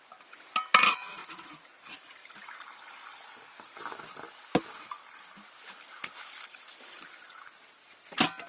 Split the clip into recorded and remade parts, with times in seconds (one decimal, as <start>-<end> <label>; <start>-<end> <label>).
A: 0.0-1.2 recorded; 1.2-1.8 remade; 1.8-8.5 recorded

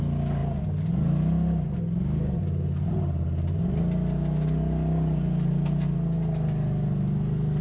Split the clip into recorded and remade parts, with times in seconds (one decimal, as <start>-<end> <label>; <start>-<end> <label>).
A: 0.0-7.6 recorded

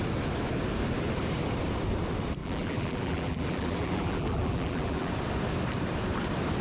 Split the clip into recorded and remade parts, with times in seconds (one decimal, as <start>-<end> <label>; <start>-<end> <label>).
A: 0.0-2.4 recorded; 2.4-5.1 remade; 5.1-6.6 recorded

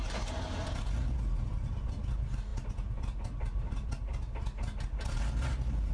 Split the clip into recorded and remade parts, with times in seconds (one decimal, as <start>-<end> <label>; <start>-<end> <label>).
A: 0.0-5.9 recorded